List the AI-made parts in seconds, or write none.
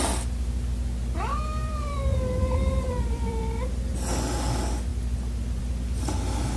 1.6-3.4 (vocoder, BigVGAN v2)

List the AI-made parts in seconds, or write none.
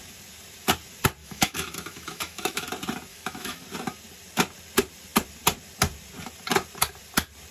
1.2-2.7 (autoencoder, DAC-VAE); 3.1-3.6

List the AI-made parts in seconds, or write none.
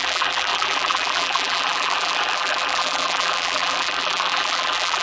0.0-5.0 (vocoder, BigVGAN v2)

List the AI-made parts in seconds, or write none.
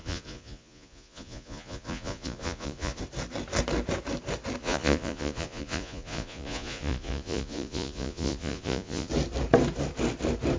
0.0-3.0 (vocoder, Vocos); 4.6-9.1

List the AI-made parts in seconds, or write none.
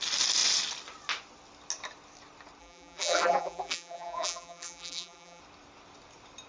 2.6-5.4 (vocoder, BigVGAN v2)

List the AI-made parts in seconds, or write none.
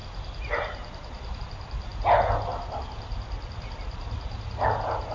none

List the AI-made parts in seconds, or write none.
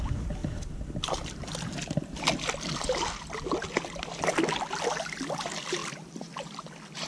5.8-6.4 (vocoder, BigVGAN v2)